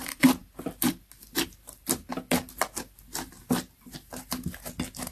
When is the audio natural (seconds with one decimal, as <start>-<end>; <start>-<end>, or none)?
0.0-5.1